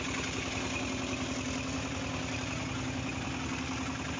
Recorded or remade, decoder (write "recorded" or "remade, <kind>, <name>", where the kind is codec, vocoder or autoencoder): recorded